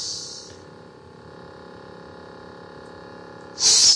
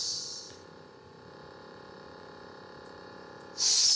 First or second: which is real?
first